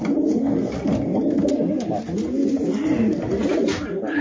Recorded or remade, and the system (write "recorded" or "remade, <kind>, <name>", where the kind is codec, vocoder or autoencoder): recorded